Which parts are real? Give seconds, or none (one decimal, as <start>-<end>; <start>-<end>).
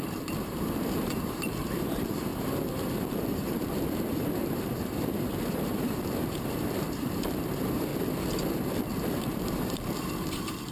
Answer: 7.9-9.2